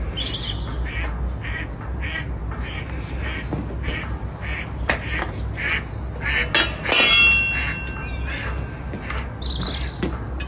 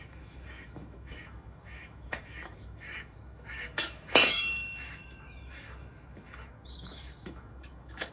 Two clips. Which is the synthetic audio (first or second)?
second